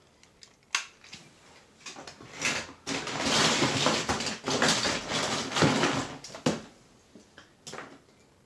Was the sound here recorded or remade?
recorded